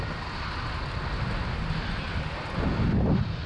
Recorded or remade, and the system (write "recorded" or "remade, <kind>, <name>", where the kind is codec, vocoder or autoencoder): recorded